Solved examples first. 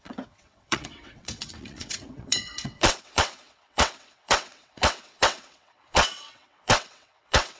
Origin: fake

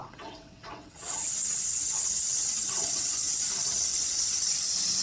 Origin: fake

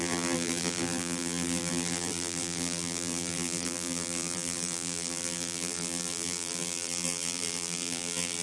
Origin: fake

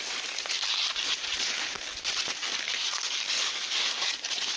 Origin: real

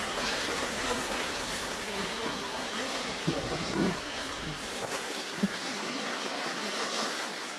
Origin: fake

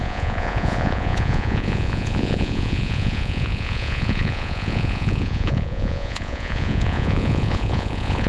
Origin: fake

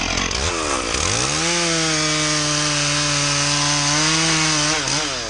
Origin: real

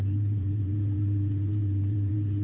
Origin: fake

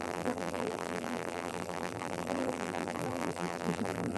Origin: fake